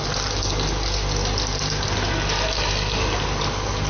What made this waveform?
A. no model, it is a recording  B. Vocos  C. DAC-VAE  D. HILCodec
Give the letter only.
A